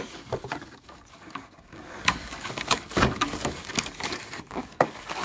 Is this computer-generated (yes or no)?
yes